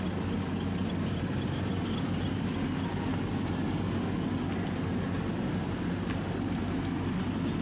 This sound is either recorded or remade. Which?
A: recorded